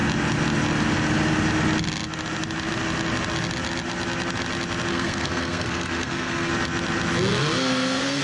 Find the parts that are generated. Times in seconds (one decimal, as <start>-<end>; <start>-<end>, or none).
4.9-6.5; 7.3-8.2